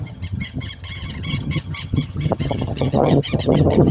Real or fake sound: fake